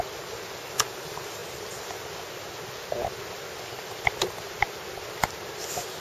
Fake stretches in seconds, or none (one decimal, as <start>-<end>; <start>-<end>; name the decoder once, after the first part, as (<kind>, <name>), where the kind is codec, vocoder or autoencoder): none